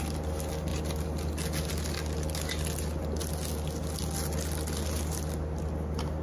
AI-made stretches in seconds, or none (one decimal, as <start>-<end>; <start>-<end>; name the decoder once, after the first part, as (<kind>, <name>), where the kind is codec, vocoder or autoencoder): none